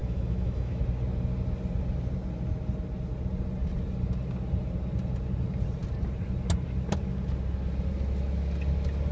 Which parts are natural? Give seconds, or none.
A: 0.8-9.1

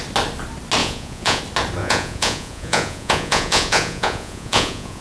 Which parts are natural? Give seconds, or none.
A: 0.0-0.8; 1.4-1.8

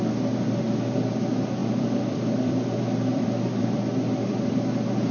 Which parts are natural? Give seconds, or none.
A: 0.0-1.6; 4.5-5.1

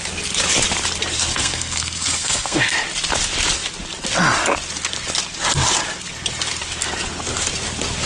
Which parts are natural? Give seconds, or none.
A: 0.0-1.3; 2.7-8.1